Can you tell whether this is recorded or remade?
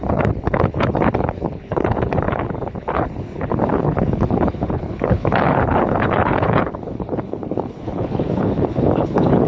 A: remade